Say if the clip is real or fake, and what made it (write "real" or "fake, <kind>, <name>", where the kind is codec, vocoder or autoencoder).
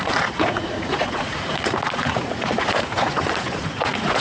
fake, vocoder, Vocos